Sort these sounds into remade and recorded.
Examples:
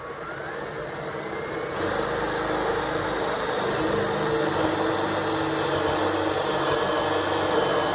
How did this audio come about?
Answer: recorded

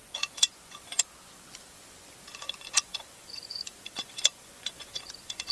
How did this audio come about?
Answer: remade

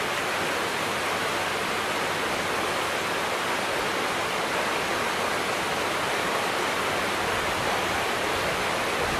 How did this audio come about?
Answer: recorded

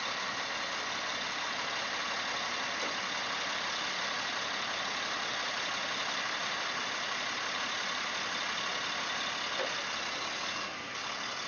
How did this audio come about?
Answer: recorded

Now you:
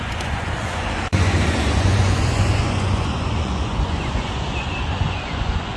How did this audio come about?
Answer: remade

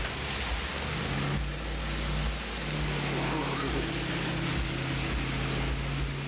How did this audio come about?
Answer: recorded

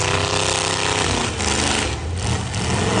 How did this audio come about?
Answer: recorded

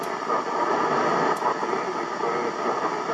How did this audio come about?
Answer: recorded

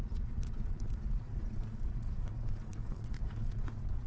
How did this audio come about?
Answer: remade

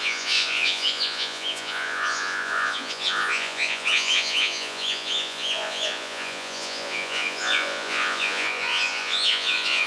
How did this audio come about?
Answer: remade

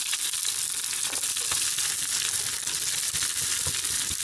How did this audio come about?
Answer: recorded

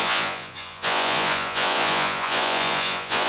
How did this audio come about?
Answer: remade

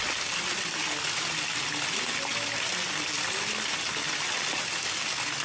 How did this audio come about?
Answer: recorded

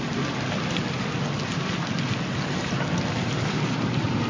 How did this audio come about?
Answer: recorded